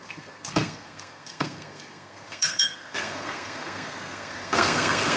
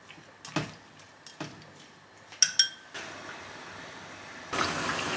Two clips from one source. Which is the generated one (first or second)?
first